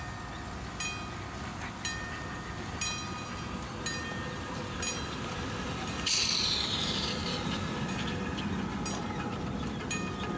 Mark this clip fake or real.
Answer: real